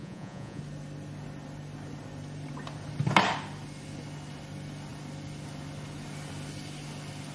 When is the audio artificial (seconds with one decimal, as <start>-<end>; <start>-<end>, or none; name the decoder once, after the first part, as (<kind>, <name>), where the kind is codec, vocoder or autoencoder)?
0.0-0.6 (vocoder, Vocos)